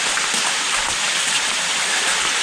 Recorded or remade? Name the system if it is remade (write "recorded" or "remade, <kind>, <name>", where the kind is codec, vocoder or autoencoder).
recorded